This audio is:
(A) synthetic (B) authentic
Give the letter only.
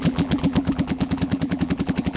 A